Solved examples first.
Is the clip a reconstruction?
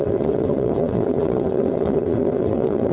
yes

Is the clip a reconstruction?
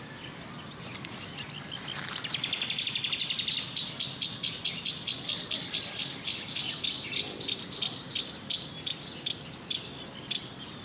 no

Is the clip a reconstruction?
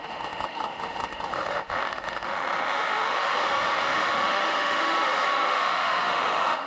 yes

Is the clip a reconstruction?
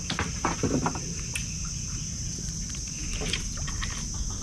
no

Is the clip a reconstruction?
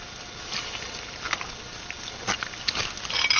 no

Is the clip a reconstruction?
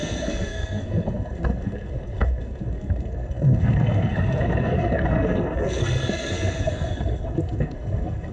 yes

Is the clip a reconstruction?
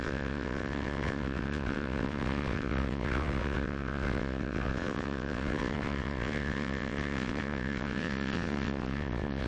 yes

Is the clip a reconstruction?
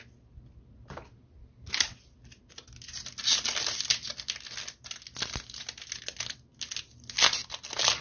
no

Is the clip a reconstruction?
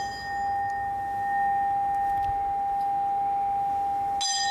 no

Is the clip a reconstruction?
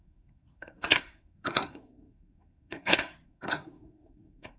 yes